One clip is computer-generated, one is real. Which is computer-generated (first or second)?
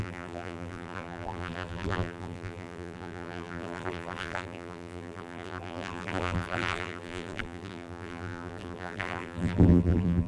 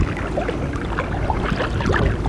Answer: first